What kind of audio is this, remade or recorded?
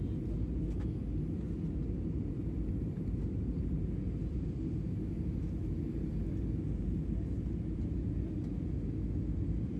recorded